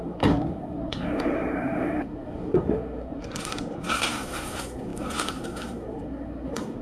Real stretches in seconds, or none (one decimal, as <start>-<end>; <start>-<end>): none